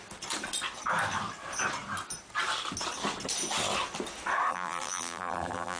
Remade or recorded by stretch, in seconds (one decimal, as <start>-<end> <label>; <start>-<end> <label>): 0.0-4.5 recorded; 4.5-5.8 remade